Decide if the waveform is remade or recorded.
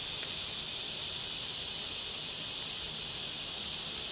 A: recorded